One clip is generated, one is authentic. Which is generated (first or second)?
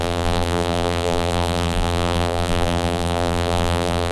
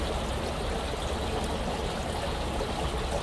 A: first